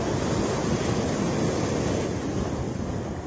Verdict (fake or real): real